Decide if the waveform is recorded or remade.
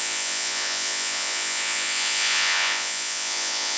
remade